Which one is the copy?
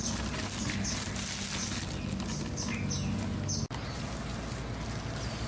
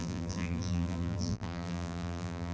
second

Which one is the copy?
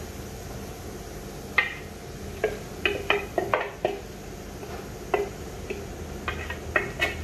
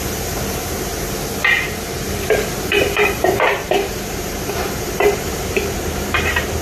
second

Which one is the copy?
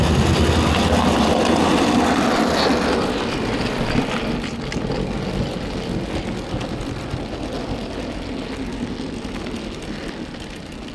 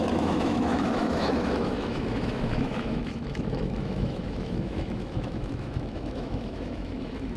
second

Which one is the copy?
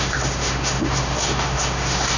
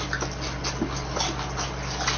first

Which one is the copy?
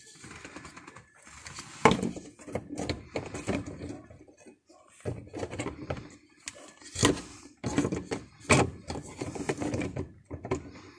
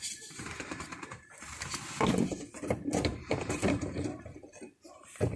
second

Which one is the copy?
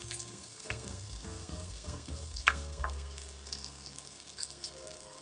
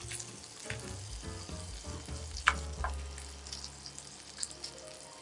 first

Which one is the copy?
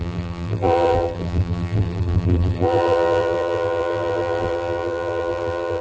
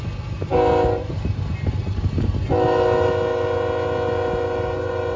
first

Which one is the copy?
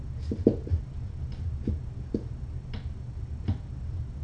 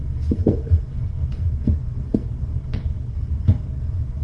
second